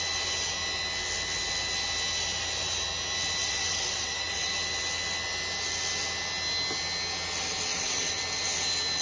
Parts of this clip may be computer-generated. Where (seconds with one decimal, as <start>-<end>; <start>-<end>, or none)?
3.4-4.5; 7.7-8.2